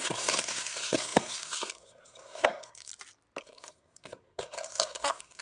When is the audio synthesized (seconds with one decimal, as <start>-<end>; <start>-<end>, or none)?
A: 0.0-2.9; 3.4-5.4